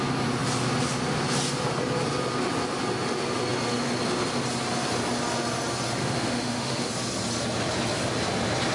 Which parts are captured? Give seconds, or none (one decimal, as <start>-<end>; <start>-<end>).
0.0-6.0; 6.9-8.7